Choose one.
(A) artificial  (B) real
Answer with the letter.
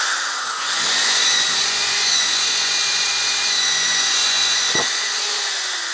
A